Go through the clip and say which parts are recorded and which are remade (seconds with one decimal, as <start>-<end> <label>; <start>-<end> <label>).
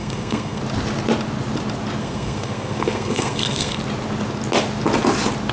0.0-0.6 remade; 0.6-2.0 recorded; 2.0-3.8 remade; 3.8-5.5 recorded